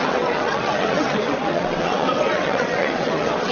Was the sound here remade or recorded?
remade